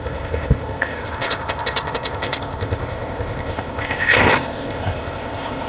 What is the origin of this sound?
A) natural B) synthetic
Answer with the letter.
B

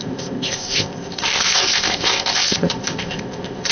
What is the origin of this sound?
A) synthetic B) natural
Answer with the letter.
A